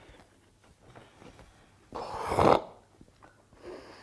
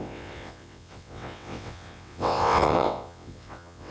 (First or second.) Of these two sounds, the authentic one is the first